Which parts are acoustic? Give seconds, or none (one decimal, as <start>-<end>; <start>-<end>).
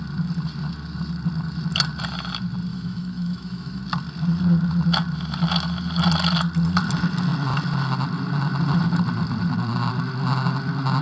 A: 0.0-2.7; 3.8-11.0